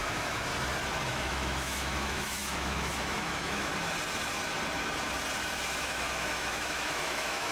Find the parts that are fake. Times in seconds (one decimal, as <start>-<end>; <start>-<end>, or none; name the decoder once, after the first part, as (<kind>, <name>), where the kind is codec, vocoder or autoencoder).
0.0-0.5 (autoencoder, DAC-VAE); 1.1-3.7; 5.8-7.5